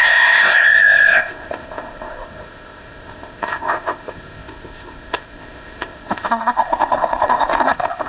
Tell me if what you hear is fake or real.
fake